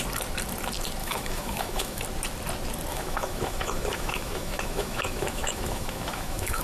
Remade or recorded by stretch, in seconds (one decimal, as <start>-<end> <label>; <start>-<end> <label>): 0.0-1.0 recorded; 1.0-2.0 remade; 2.0-2.9 recorded; 2.9-6.6 remade